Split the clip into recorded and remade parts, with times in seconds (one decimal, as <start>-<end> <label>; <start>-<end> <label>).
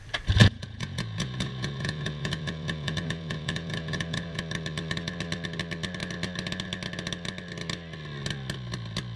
0.0-0.4 recorded; 0.4-4.4 remade; 4.4-9.2 recorded